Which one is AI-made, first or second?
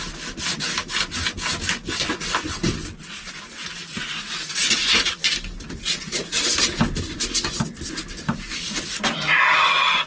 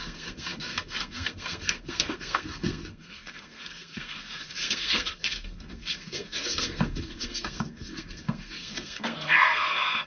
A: second